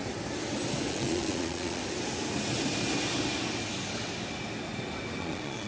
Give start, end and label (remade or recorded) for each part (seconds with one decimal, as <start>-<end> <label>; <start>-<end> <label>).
0.0-0.9 recorded; 0.9-1.8 remade; 1.8-5.2 recorded; 5.2-5.7 remade